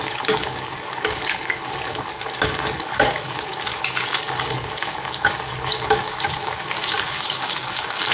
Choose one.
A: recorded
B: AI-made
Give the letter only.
B